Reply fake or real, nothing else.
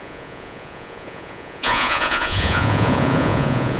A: fake